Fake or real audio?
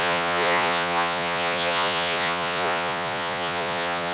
fake